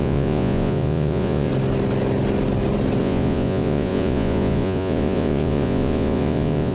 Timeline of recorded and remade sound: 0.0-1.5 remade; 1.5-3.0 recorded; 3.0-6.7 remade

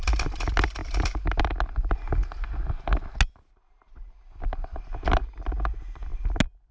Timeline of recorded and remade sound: 0.0-6.7 recorded

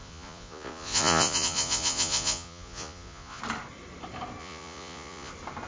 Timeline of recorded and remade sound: 0.0-3.4 remade; 3.4-4.4 recorded; 4.4-5.3 remade; 5.3-5.7 recorded

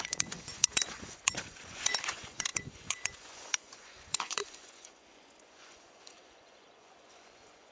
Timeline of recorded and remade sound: 0.0-7.7 remade

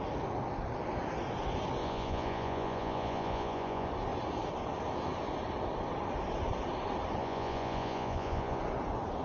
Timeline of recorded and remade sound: 0.0-1.8 recorded; 1.8-3.9 remade; 3.9-7.2 recorded; 7.2-8.6 remade; 8.6-9.2 recorded

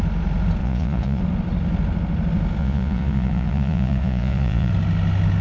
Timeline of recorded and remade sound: 0.0-0.6 recorded; 0.6-1.2 remade; 1.2-2.6 recorded; 2.6-4.7 remade; 4.7-5.4 recorded